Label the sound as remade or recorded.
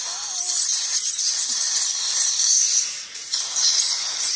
recorded